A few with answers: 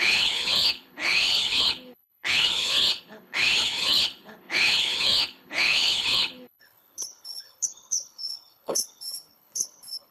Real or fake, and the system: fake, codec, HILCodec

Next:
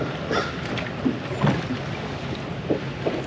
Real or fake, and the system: real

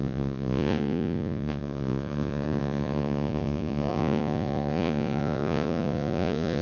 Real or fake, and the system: fake, vocoder, Vocos